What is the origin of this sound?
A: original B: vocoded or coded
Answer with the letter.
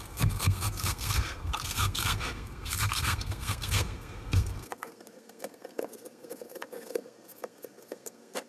B